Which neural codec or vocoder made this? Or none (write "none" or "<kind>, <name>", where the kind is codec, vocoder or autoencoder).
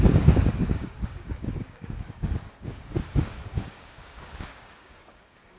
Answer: codec, DAC